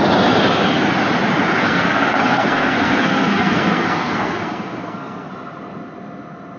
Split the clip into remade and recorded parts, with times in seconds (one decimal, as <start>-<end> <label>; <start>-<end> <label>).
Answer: 0.0-1.6 recorded; 1.6-5.3 remade; 5.3-6.6 recorded